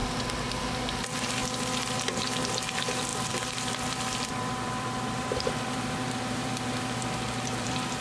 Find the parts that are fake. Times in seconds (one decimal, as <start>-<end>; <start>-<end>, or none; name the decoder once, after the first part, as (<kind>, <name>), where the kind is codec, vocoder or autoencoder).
3.1-8.0 (vocoder, BigVGAN v2)